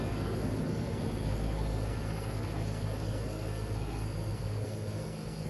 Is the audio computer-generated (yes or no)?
yes